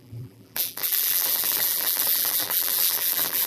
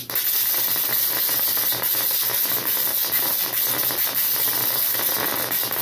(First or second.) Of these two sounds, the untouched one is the second